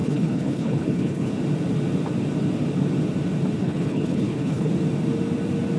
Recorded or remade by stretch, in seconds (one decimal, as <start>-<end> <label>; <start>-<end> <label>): 0.0-1.3 remade; 1.3-3.6 recorded; 3.6-4.7 remade; 4.7-5.8 recorded